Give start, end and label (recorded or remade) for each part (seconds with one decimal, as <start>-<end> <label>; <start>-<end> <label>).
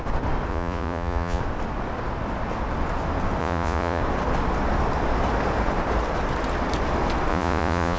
0.0-0.5 recorded; 0.5-1.4 remade; 1.4-3.4 recorded; 3.4-4.0 remade; 4.0-7.3 recorded; 7.3-8.0 remade